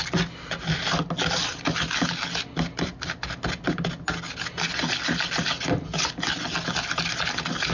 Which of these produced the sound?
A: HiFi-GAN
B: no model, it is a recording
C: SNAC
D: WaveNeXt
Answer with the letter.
B